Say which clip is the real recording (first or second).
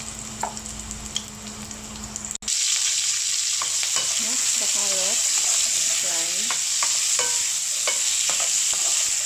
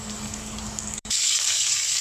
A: first